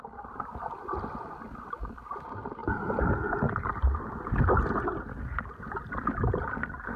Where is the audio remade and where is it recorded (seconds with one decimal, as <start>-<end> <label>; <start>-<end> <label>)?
0.0-7.0 recorded